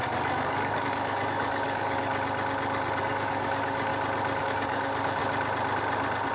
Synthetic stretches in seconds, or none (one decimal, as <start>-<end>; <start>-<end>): 0.0-2.1; 3.0-3.9; 4.4-5.2